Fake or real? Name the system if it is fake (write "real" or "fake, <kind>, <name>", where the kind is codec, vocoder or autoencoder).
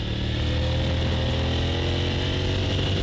real